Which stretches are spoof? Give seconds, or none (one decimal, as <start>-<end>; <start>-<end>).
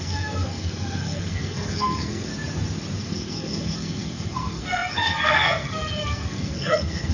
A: 0.0-2.3; 3.0-7.1